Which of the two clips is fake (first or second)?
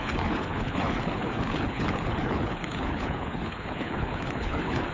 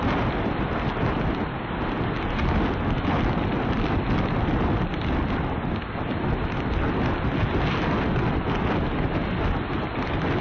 first